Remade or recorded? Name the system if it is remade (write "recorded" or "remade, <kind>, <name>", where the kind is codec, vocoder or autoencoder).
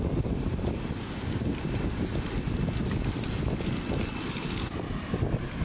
recorded